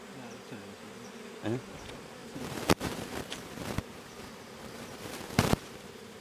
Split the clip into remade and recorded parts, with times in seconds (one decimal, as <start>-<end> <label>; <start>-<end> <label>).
0.0-2.2 recorded; 2.2-6.2 remade